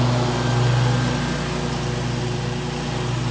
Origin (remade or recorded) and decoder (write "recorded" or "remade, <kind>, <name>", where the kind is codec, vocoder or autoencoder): recorded